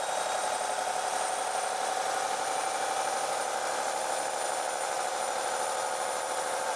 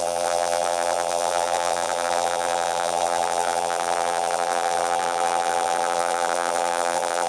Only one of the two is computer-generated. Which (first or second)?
second